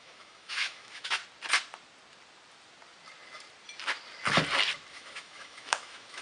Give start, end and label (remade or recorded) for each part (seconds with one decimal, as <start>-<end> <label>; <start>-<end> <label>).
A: 0.0-1.2 remade; 1.2-4.9 recorded; 4.9-6.2 remade